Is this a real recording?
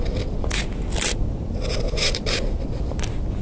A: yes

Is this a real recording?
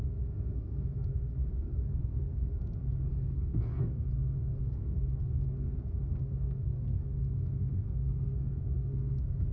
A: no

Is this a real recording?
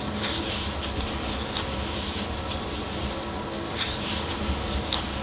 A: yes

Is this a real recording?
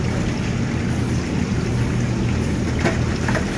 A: yes